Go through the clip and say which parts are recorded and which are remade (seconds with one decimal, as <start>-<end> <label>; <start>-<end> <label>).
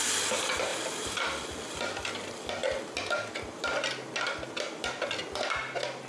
0.0-0.7 recorded; 0.7-1.2 remade; 1.2-6.1 recorded